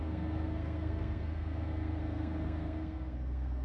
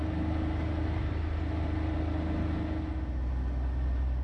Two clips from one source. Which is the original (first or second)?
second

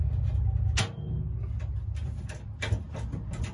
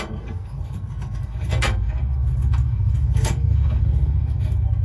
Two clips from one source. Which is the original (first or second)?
first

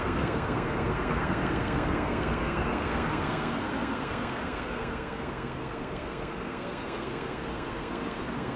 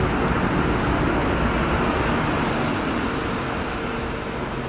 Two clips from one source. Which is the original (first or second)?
second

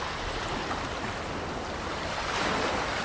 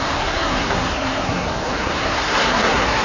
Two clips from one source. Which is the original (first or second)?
first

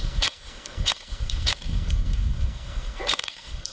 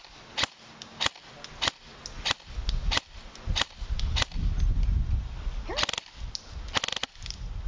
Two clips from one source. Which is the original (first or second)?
second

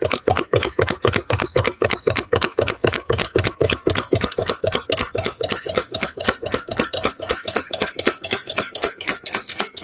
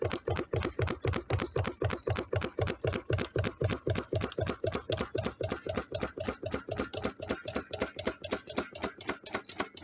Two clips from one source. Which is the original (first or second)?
second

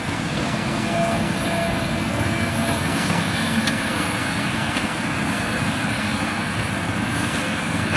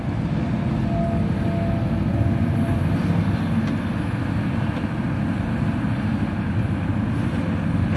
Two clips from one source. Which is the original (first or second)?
second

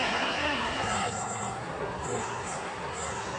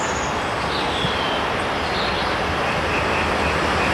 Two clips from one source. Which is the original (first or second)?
second